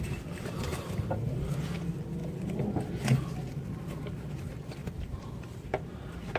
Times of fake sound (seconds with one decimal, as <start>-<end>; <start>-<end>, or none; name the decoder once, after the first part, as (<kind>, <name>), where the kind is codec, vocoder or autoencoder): 0.7-1.4 (vocoder, BigVGAN v2); 4.8-6.4